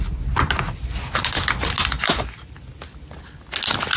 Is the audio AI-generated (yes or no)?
no